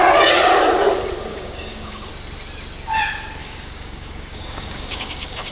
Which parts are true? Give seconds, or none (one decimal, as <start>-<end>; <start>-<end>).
0.0-1.3; 2.1-3.4